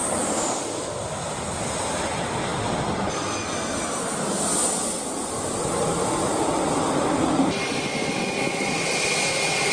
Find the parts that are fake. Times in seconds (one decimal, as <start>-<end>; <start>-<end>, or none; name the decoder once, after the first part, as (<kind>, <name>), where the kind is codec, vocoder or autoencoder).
none